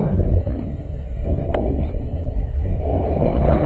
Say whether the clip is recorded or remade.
remade